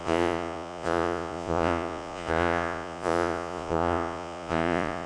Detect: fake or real fake